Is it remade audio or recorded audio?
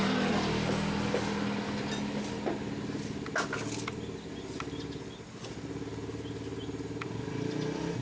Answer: recorded